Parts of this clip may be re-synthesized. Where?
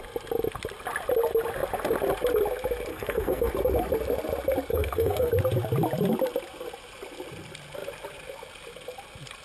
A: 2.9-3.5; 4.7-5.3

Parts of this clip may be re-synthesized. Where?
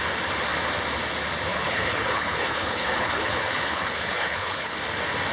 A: 1.5-4.7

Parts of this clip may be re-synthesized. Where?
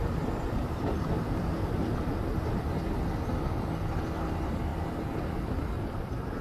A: none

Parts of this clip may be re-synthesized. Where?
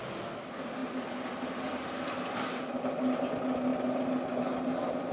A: none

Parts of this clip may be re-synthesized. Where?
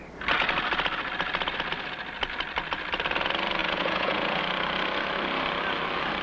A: 3.6-4.4